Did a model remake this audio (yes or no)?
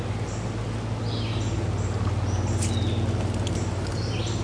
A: no